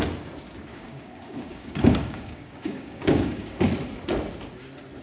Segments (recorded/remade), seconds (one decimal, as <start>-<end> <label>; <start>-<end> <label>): 0.0-0.7 recorded; 0.7-3.6 remade; 3.6-5.0 recorded